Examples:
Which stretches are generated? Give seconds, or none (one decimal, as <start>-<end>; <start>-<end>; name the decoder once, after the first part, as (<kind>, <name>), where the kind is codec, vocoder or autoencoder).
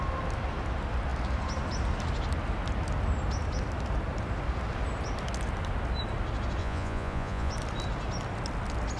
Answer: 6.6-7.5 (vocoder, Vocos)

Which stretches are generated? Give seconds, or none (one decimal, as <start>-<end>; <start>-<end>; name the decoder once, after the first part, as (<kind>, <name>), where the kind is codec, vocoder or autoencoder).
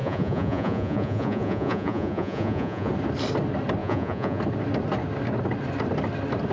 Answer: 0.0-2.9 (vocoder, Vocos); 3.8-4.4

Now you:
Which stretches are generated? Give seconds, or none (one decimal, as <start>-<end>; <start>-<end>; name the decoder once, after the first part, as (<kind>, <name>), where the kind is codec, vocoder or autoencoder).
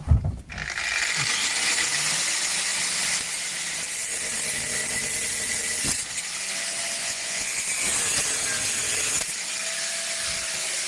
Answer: 7.0-7.6 (vocoder, Vocos)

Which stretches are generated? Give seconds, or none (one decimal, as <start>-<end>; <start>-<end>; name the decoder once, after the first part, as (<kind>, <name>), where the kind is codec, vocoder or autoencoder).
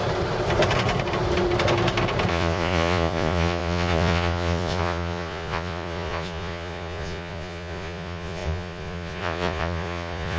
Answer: 2.3-10.4 (vocoder, Vocos)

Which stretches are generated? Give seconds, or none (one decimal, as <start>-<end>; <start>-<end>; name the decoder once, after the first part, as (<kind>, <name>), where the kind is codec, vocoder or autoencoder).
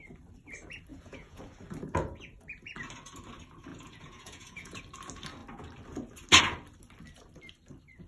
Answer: 0.9-1.4 (vocoder, Vocos); 3.7-4.8